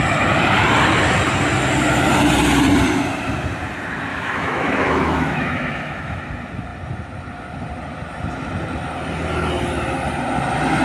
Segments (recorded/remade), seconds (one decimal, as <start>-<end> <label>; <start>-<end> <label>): 0.0-4.1 recorded; 4.1-6.2 remade; 6.2-10.8 recorded